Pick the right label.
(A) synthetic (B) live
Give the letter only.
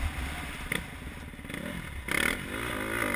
B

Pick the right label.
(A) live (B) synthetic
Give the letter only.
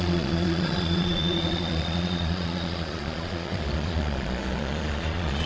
B